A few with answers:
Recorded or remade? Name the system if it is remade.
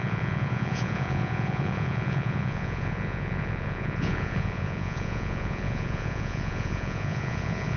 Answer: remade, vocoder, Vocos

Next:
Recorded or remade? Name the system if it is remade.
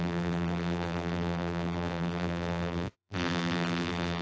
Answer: remade, vocoder, BigVGAN v2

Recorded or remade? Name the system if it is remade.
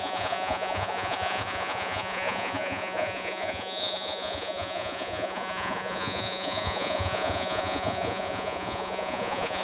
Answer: remade, vocoder, Vocos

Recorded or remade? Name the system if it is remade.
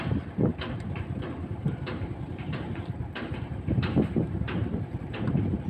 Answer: remade, vocoder, BigVGAN v2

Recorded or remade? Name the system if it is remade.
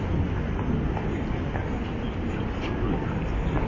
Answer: recorded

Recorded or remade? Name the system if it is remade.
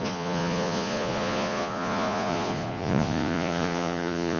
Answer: remade, vocoder, Vocos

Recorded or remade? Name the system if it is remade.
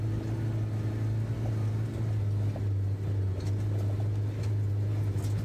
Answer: recorded